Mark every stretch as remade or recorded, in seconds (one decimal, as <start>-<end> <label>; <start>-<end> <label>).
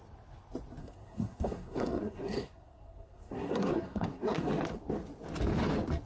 0.0-0.8 recorded; 0.8-4.5 remade; 4.5-6.1 recorded